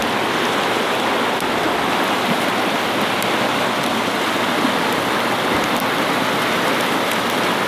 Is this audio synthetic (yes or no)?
no